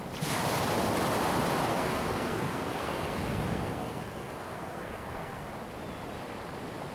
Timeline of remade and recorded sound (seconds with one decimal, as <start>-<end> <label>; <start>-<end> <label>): 0.0-1.7 recorded; 1.7-5.5 remade; 5.5-6.9 recorded